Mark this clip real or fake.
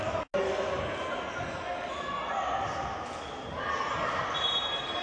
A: real